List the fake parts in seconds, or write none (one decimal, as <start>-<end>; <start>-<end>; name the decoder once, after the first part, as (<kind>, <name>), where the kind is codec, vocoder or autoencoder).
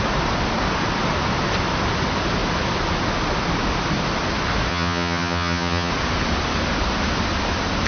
4.7-5.9 (vocoder, HiFi-GAN)